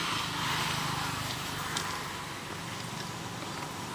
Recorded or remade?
recorded